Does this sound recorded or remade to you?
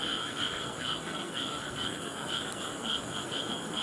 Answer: remade